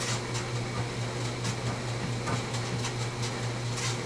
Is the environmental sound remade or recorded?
recorded